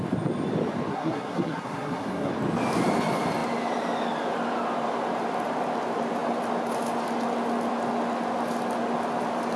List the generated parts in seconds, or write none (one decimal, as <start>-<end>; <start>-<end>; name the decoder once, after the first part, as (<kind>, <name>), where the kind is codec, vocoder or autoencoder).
0.9-2.3 (codec, SNAC)